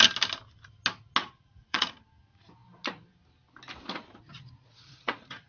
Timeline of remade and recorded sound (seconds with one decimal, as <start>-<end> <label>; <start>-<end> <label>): 0.0-1.2 recorded; 1.2-1.9 remade; 1.9-4.3 recorded; 4.3-5.5 remade